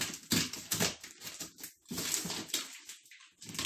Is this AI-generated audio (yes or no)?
no